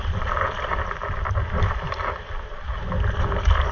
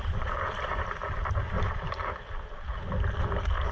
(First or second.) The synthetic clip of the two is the second